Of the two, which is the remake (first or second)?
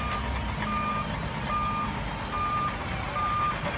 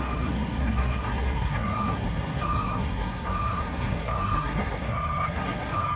second